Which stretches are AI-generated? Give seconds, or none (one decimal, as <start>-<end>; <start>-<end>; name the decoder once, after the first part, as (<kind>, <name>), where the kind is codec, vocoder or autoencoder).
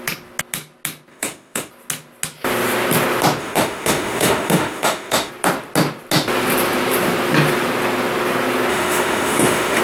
1.1-1.7 (autoencoder, DAC-VAE); 3.4-5.3; 8.7-9.8